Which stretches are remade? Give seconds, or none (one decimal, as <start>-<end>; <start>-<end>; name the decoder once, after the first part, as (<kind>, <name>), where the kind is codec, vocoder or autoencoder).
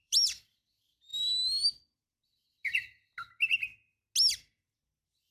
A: 0.0-1.1 (vocoder, BigVGAN v2); 4.3-5.3